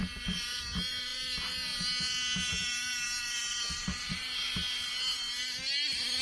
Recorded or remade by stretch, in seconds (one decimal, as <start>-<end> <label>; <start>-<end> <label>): 0.0-0.6 remade; 0.6-6.2 recorded